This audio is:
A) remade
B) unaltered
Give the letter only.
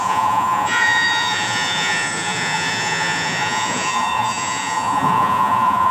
A